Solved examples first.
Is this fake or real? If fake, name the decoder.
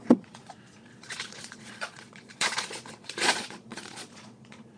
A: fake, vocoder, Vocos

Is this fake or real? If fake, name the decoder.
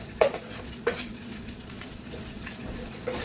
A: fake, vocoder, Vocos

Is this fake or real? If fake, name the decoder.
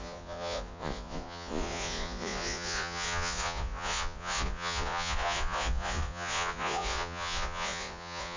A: fake, vocoder, Vocos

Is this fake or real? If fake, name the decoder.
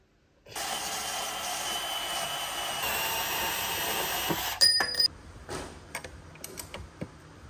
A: real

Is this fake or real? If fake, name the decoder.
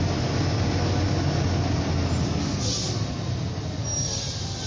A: real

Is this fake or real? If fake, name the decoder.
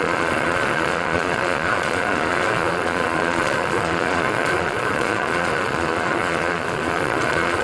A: fake, vocoder, Vocos